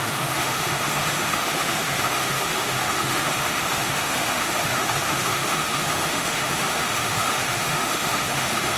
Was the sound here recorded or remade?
remade